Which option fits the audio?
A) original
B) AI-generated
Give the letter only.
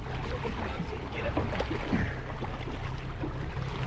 A